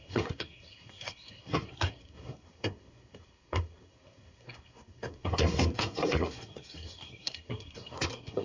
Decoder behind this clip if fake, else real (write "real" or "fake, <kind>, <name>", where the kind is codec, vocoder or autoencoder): fake, codec, SNAC